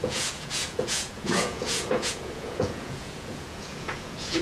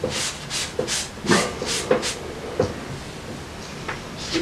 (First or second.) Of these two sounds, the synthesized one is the first